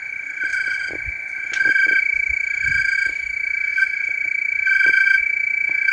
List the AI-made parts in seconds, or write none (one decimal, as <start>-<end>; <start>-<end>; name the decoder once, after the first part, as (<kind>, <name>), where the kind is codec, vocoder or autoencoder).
3.7-5.2 (vocoder, BigVGAN v2)